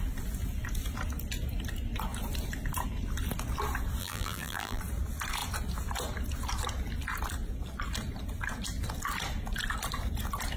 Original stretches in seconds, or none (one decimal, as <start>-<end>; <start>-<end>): 0.0-4.0; 4.8-10.6